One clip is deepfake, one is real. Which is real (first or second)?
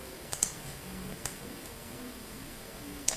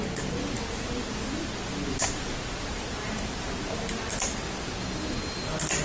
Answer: second